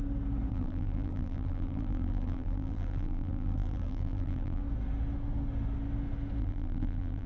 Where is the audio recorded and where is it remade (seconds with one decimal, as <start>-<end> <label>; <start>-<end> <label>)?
0.0-0.5 recorded; 0.5-4.6 remade; 4.6-6.4 recorded; 6.4-7.3 remade